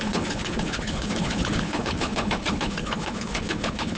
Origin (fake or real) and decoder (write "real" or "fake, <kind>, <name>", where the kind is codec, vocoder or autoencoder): fake, codec, HILCodec